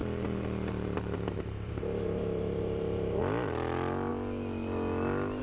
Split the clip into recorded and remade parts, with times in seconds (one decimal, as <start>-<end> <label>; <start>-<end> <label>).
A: 0.0-3.2 remade; 3.2-5.4 recorded